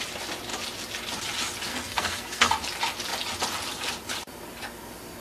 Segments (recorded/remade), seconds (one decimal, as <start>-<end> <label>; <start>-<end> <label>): 0.0-1.7 recorded; 1.7-2.5 remade; 2.5-5.2 recorded